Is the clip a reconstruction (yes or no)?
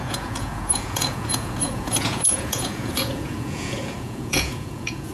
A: yes